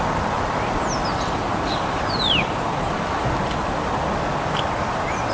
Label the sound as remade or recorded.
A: recorded